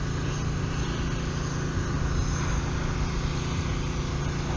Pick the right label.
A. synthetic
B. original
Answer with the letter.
B